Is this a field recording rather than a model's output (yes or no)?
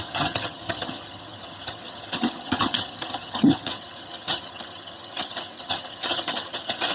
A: no